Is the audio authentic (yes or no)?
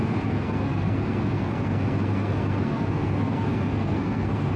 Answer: no